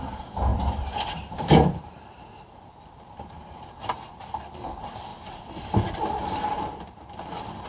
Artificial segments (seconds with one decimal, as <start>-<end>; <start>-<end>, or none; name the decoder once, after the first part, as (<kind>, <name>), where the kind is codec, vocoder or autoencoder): 0.5-4.2 (vocoder, BigVGAN v2); 5.1-7.3